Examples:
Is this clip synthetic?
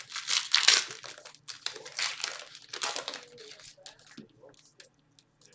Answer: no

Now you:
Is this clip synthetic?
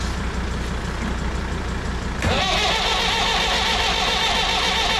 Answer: no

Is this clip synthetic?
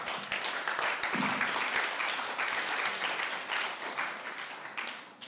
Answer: no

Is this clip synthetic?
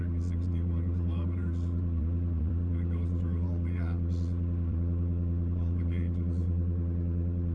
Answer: yes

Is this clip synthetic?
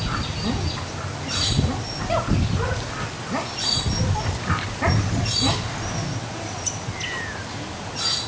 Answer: no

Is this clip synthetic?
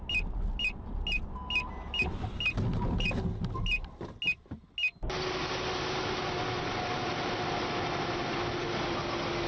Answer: no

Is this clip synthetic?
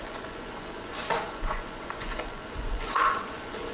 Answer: yes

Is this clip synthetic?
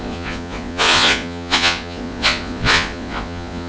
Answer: yes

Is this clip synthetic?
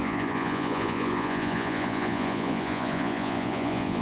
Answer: yes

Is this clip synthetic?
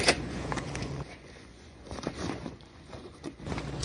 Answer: yes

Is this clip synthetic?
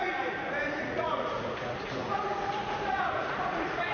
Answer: yes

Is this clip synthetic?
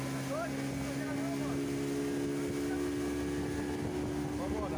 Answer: no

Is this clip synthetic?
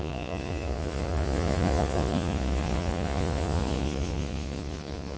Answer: yes